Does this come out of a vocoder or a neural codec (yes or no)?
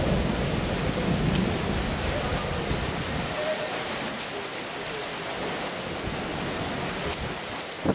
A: no